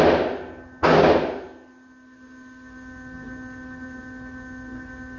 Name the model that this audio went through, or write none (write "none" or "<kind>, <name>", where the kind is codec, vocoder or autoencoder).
none